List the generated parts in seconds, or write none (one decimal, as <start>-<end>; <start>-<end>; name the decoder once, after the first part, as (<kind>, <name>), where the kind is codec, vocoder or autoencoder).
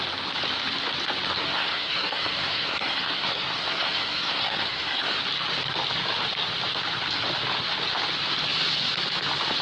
1.4-5.2 (codec, SNAC)